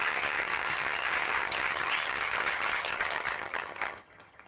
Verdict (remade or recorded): remade